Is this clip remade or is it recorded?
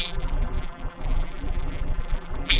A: remade